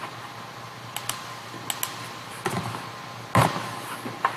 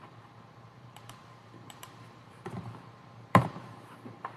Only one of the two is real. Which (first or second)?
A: first